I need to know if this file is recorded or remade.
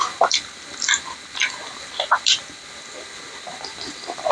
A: recorded